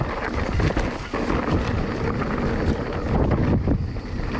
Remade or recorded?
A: recorded